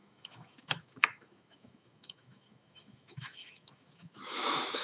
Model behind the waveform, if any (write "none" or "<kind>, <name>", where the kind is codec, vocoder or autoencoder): autoencoder, DAC-VAE